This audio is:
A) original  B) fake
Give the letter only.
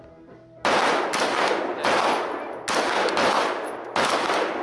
A